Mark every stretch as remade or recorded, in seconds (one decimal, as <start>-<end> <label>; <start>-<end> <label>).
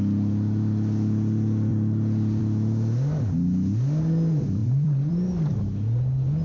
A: 0.0-1.7 recorded; 1.7-2.4 remade; 2.4-4.6 recorded; 4.6-5.1 remade; 5.1-6.4 recorded